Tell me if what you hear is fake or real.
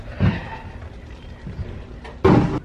fake